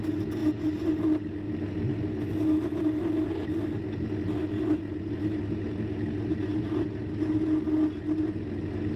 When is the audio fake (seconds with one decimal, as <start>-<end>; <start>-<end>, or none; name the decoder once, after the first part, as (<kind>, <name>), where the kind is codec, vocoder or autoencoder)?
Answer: none